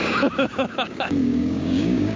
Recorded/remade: remade